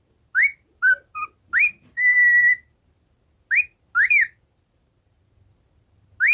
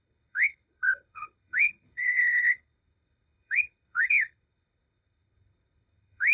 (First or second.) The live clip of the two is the first